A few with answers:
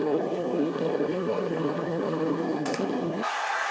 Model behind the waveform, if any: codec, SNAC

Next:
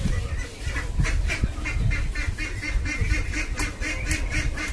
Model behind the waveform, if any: none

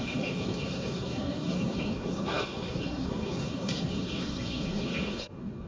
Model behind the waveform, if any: codec, SNAC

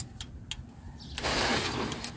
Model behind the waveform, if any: none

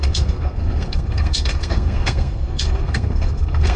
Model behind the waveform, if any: codec, SNAC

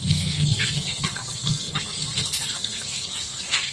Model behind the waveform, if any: codec, SNAC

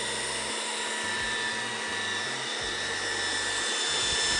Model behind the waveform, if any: none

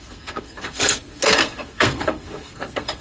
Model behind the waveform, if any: codec, SNAC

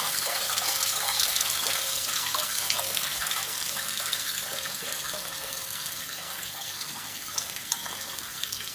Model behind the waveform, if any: codec, SNAC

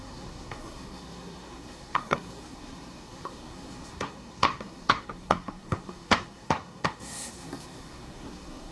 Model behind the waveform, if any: codec, SNAC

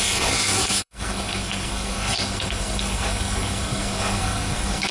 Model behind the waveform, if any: codec, SNAC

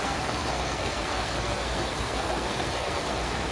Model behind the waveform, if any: codec, SNAC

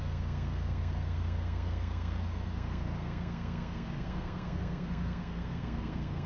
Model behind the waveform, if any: codec, SNAC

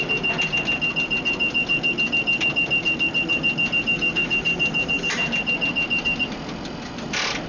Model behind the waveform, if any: none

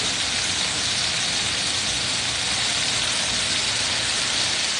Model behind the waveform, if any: none